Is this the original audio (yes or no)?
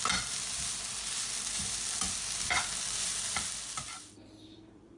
yes